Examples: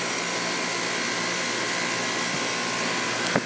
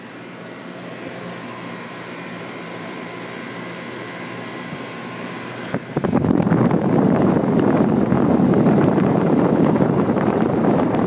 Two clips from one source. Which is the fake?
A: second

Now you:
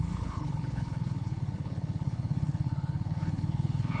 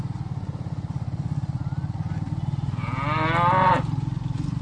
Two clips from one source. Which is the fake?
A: first